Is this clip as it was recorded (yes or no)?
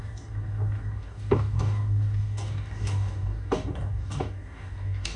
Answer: no